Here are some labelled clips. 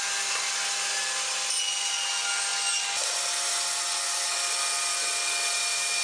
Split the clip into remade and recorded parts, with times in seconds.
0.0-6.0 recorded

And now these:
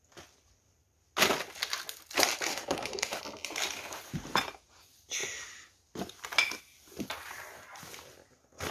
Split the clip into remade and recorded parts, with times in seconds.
0.0-2.5 recorded; 2.5-3.2 remade; 3.2-8.7 recorded

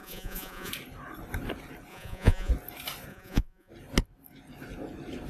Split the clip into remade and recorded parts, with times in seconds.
0.0-0.7 remade; 0.7-1.9 recorded; 1.9-2.5 remade; 2.5-3.1 recorded; 3.1-3.7 remade; 3.7-5.3 recorded

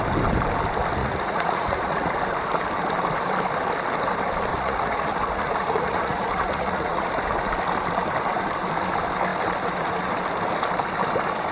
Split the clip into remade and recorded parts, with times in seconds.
0.0-1.0 recorded; 1.0-2.1 remade; 2.1-4.5 recorded; 4.5-7.1 remade; 7.1-11.5 recorded

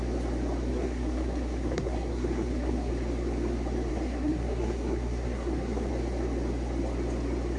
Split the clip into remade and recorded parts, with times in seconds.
0.0-0.7 recorded; 0.7-2.9 remade; 2.9-3.9 recorded; 3.9-5.9 remade; 5.9-7.6 recorded